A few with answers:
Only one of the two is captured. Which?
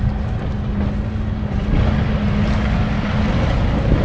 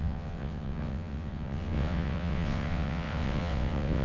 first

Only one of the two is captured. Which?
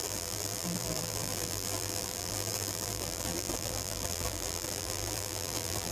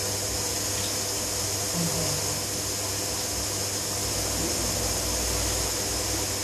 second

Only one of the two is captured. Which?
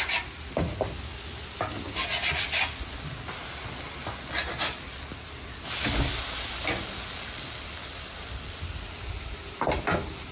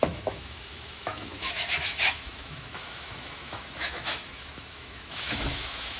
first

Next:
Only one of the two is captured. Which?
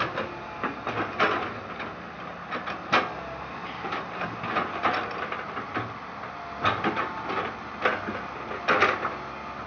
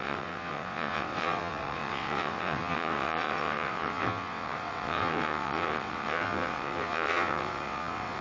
first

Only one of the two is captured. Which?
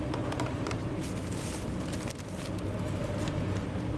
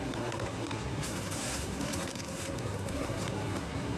first